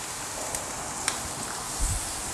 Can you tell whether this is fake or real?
real